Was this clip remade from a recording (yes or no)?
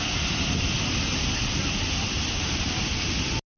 no